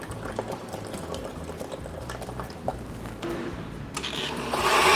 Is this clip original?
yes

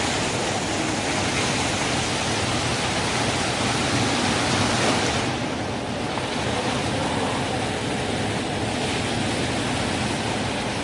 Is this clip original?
yes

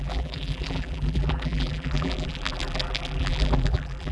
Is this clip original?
no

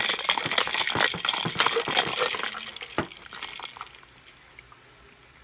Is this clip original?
yes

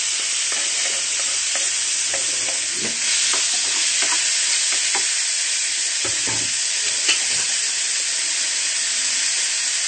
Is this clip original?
yes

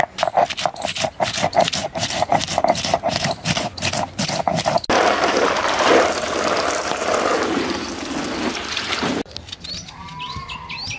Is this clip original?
yes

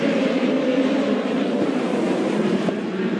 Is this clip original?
no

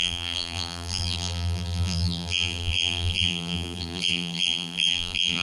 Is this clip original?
no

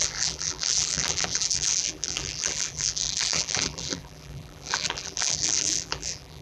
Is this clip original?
no